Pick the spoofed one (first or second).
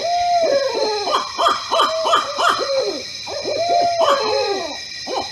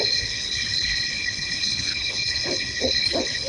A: second